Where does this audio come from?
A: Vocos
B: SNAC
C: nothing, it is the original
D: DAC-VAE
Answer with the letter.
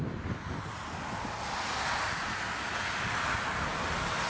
C